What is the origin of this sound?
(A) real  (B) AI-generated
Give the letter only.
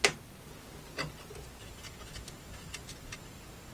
A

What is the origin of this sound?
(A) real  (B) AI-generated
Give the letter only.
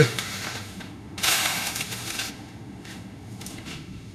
B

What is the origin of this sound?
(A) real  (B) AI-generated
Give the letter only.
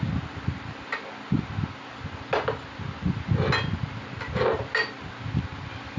A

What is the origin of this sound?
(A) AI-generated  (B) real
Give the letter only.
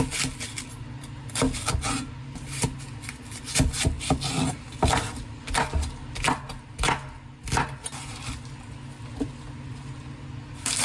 B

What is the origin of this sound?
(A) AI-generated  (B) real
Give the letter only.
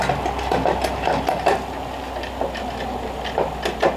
B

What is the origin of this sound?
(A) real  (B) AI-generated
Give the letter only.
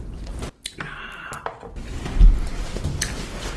A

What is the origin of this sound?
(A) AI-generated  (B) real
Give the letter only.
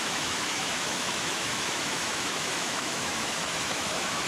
A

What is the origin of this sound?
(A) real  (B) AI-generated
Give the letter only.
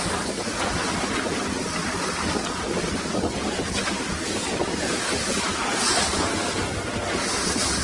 A